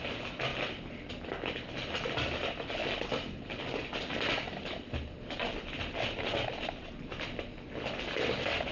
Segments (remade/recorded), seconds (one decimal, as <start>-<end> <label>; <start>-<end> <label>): 0.0-8.7 recorded